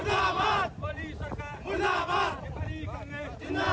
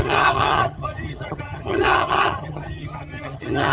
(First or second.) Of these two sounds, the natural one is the first